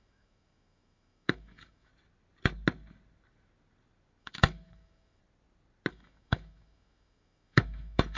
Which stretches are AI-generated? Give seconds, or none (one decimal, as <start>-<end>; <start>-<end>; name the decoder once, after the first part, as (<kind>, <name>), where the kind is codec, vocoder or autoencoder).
0.0-1.9 (autoencoder, DAC-VAE); 4.2-5.2; 5.9-8.2